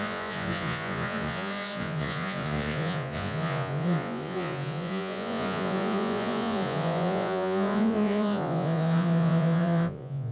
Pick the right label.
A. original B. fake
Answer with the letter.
B